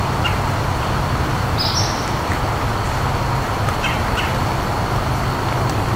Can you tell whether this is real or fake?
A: real